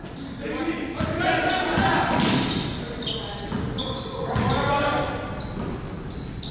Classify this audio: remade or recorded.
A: recorded